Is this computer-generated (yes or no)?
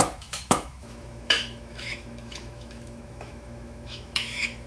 yes